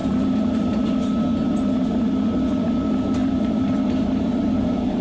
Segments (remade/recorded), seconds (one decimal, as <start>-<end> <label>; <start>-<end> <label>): 0.0-0.8 remade; 0.8-1.4 recorded; 1.4-2.1 remade; 2.1-3.2 recorded; 3.2-5.0 remade